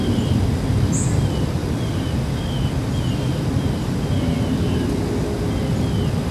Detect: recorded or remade recorded